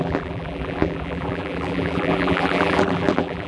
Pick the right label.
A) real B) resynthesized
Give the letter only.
B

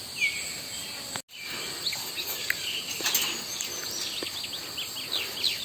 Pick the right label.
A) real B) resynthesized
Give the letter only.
A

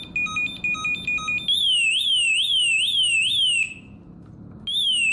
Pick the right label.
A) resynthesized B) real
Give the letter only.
B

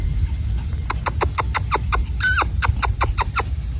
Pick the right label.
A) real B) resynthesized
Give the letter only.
A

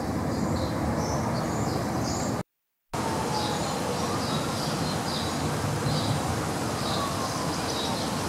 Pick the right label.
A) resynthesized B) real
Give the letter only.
B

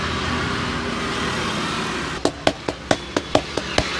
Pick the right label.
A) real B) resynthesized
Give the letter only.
A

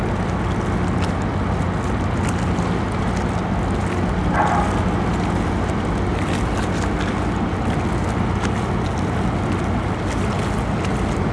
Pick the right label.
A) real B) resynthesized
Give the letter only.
A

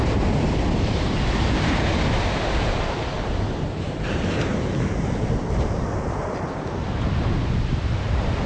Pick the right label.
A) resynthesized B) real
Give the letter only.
A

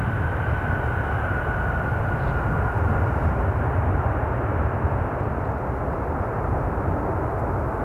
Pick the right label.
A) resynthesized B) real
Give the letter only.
B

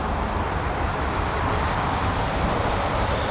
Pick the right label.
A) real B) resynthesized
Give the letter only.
B